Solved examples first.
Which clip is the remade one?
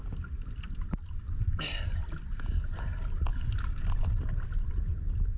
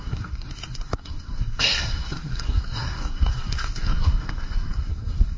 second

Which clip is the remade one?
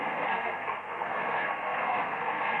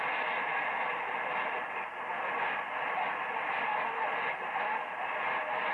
first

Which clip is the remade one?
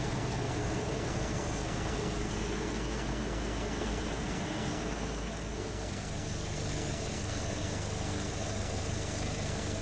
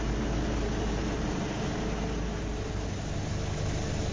first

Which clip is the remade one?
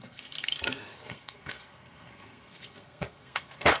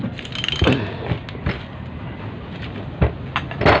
first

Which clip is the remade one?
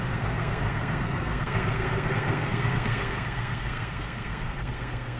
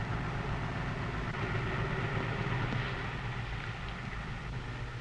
first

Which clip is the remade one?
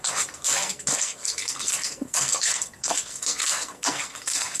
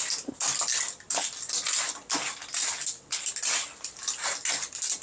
first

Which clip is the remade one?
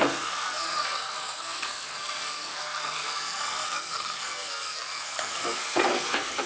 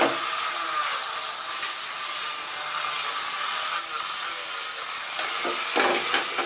first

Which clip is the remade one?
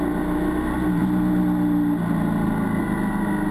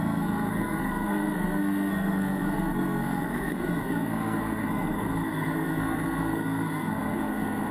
second